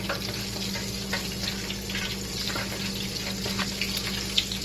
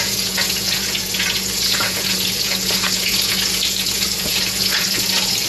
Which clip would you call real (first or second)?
first